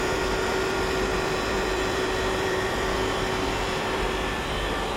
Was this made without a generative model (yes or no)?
no